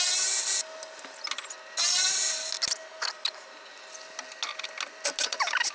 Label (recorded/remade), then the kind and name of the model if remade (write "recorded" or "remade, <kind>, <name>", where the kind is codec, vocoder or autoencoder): recorded